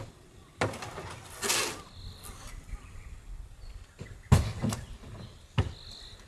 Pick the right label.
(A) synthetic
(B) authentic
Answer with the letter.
B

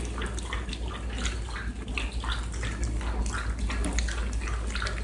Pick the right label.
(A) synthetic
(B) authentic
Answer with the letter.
B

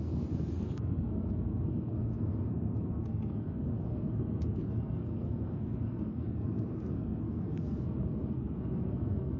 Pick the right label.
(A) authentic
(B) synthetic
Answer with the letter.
B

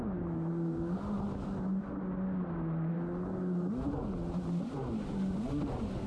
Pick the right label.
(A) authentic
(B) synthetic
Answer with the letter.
A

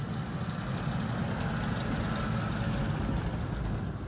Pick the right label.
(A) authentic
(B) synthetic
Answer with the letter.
A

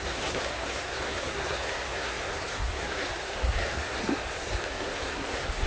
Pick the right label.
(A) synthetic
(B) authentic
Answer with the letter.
A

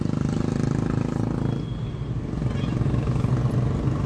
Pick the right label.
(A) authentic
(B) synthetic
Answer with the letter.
A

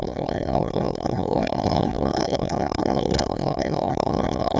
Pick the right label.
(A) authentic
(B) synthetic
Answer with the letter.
B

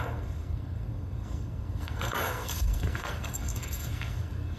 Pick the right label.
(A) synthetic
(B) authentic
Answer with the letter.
A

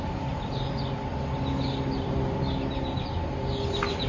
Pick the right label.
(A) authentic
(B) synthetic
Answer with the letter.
A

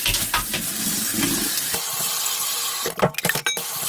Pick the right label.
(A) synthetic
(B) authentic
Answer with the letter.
B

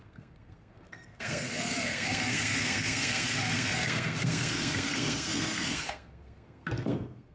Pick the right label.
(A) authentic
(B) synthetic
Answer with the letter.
B